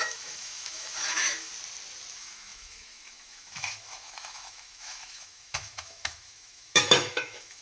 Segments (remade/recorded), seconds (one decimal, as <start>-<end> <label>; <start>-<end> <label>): 0.0-1.5 remade; 1.5-2.1 recorded; 2.1-7.6 remade